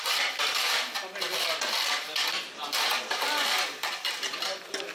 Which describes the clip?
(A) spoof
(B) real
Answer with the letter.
A